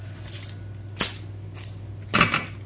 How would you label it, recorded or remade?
recorded